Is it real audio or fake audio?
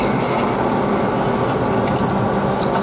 real